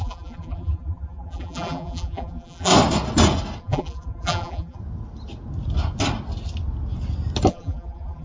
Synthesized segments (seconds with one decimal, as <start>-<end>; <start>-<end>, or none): 0.0-2.7; 3.6-4.8; 7.5-8.2

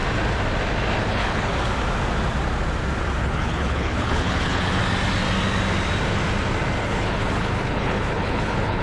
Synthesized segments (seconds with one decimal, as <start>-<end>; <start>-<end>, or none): 1.0-1.5; 3.2-4.8; 6.8-8.8

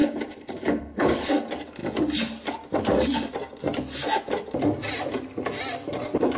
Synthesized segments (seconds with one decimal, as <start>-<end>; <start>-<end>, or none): 0.0-1.3

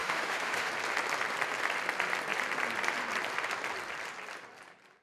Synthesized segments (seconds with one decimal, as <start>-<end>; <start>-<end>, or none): 0.0-0.7

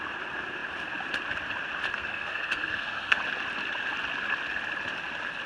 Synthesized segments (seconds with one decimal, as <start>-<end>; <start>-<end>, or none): 1.9-3.2